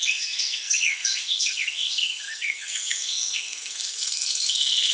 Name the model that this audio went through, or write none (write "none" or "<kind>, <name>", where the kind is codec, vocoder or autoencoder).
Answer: codec, SNAC